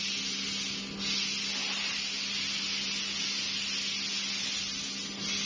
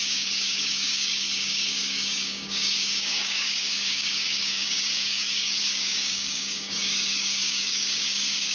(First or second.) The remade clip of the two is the second